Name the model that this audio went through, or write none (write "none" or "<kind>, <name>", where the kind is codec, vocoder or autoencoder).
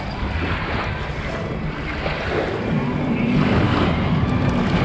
none